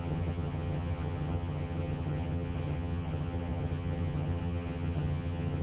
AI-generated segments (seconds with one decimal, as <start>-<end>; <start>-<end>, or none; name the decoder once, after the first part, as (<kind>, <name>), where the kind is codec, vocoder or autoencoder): 0.0-5.6 (vocoder, HiFi-GAN)